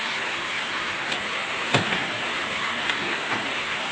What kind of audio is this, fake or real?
fake